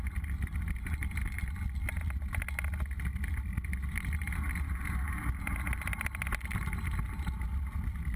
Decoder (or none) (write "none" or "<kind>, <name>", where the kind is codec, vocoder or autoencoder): none